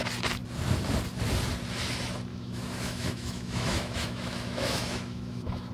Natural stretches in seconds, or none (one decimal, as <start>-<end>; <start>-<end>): 0.0-2.3